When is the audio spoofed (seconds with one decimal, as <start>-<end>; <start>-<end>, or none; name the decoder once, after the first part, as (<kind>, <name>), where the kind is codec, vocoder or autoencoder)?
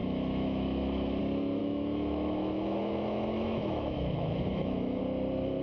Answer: 0.0-1.2 (autoencoder, DAC-VAE); 1.6-5.0